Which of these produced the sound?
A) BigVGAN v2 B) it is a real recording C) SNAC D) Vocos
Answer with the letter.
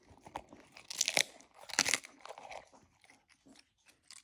B